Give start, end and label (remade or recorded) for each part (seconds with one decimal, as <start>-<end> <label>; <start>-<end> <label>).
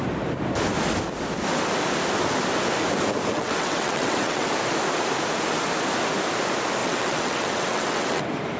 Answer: 0.0-3.3 recorded; 3.3-4.5 remade; 4.5-6.8 recorded; 6.8-8.2 remade; 8.2-8.6 recorded